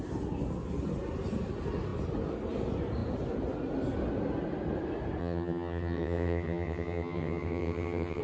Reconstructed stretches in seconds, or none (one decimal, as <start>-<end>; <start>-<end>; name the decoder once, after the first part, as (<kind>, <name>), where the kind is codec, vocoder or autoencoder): 5.2-8.2 (vocoder, HiFi-GAN)